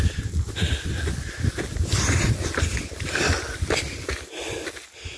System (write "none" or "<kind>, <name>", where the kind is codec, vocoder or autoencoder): none